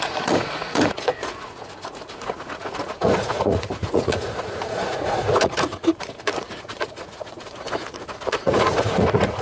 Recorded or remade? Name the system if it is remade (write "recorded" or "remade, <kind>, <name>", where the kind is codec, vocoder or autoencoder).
remade, vocoder, Vocos